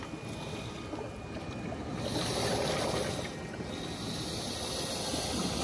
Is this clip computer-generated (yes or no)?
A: no